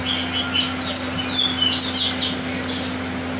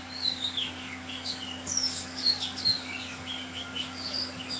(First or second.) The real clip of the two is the first